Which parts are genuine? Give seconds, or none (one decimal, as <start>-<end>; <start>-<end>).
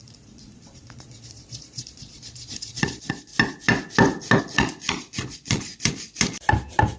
3.3-4.4; 5.7-7.0